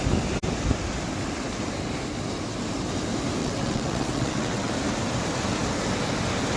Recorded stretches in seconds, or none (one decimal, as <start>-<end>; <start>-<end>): 0.0-3.4; 4.7-6.6